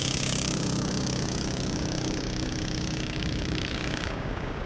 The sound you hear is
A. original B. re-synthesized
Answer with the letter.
B